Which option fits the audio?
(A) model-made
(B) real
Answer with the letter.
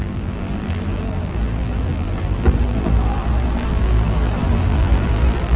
A